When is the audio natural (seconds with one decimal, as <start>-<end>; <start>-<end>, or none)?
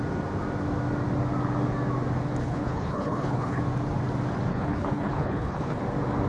0.0-2.4; 3.6-4.5; 5.8-6.3